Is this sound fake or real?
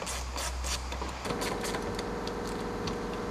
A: real